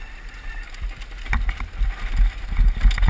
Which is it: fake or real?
real